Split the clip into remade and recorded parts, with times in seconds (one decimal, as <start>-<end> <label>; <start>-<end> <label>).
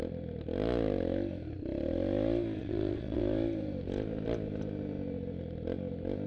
0.0-2.6 recorded; 2.6-3.2 remade; 3.2-6.3 recorded